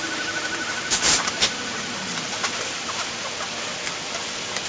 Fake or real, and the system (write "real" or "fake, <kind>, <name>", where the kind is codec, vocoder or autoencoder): real